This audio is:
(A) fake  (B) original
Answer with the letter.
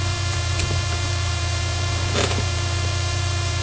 A